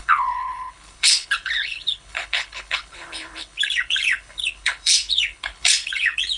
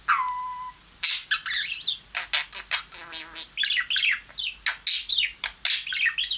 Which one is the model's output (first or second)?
first